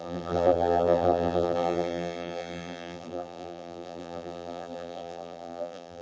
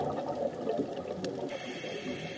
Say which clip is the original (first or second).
second